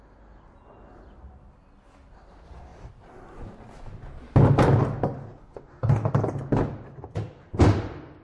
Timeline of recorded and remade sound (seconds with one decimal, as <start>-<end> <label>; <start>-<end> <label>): 0.0-5.4 recorded; 5.4-6.1 remade; 6.1-8.2 recorded